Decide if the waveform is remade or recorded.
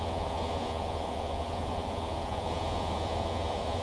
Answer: remade